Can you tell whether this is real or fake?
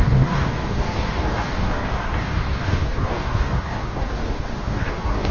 fake